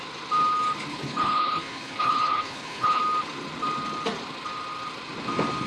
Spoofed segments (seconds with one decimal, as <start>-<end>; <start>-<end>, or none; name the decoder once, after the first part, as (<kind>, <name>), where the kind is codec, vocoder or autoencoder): 0.9-3.0 (codec, HILCodec)